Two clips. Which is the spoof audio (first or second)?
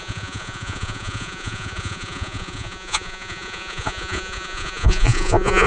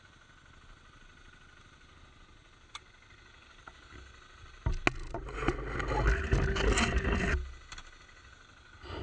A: first